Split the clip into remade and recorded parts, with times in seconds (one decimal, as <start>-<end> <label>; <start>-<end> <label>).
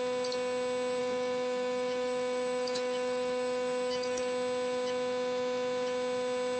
0.0-1.0 recorded; 1.0-4.2 remade; 4.2-6.6 recorded